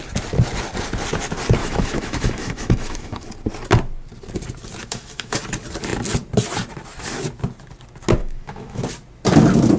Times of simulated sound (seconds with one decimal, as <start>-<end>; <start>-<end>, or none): 1.6-3.3; 4.8-5.4; 8.2-8.8